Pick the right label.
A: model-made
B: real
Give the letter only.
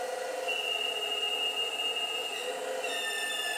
B